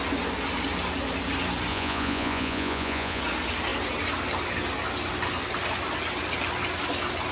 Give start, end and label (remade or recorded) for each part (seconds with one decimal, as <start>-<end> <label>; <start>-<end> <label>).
0.0-1.7 recorded; 1.7-3.2 remade; 3.2-7.3 recorded

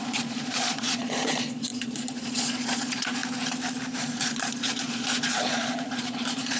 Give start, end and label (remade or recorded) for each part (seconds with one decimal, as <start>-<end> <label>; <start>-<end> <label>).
0.0-3.2 remade; 3.2-4.0 recorded; 4.0-6.6 remade

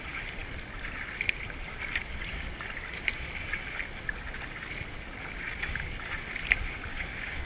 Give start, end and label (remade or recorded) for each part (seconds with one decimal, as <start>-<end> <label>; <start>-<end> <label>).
0.0-6.9 recorded; 6.9-7.5 remade

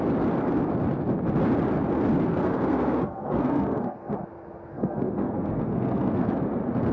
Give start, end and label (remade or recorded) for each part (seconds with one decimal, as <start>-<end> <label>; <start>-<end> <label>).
0.0-2.3 recorded; 2.3-4.1 remade; 4.1-4.7 recorded; 4.7-6.3 remade; 6.3-6.9 recorded

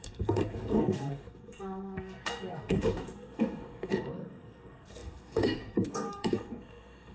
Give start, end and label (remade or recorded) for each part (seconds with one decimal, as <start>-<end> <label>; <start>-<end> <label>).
0.0-7.1 remade

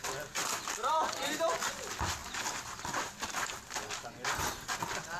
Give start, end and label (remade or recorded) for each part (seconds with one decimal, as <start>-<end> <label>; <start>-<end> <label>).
0.0-0.4 recorded; 0.4-1.4 remade; 1.4-2.2 recorded; 2.2-3.6 remade; 3.6-5.2 recorded

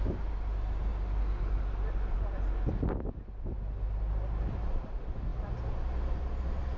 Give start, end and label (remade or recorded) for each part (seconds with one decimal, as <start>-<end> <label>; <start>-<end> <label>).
0.0-6.8 recorded

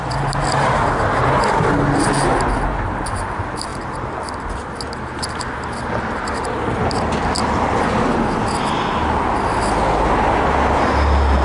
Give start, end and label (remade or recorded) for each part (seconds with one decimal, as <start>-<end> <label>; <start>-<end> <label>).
0.0-11.4 recorded